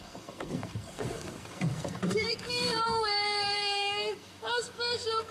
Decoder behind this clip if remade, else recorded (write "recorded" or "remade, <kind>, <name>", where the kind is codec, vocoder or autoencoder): remade, codec, SNAC